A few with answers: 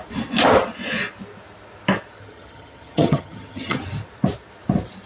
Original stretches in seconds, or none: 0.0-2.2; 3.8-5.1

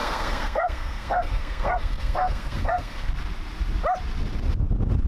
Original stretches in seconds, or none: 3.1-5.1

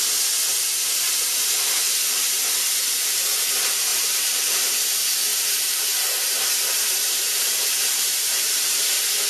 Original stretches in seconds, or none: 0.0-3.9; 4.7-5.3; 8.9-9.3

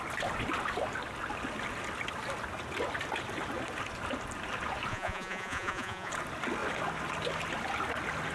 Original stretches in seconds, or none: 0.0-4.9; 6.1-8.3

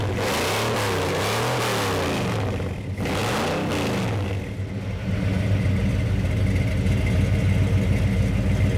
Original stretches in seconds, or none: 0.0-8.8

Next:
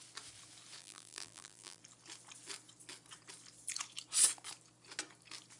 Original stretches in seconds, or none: 0.0-0.8; 1.8-5.6